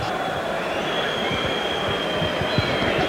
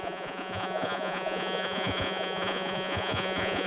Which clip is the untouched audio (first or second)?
first